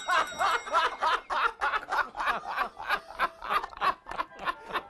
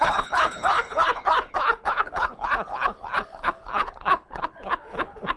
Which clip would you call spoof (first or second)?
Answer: second